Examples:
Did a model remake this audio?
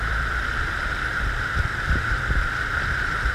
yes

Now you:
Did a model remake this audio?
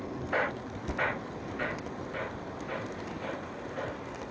no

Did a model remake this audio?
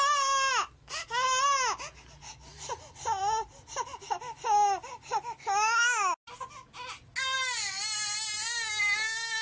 no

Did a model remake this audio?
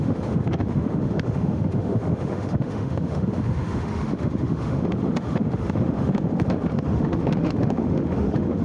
yes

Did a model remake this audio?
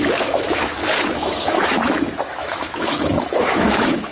yes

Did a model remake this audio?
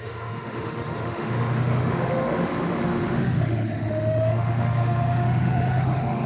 yes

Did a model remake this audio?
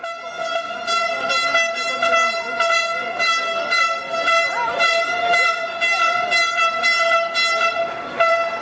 no